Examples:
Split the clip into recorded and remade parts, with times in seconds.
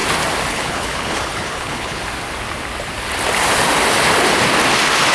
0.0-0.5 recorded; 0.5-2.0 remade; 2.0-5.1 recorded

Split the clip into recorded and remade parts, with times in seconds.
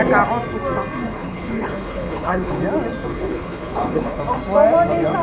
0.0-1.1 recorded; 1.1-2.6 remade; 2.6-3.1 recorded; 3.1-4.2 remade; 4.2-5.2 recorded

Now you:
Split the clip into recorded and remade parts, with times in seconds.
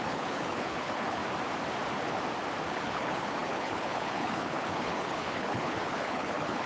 0.0-1.2 remade; 1.2-2.7 recorded; 2.7-6.7 remade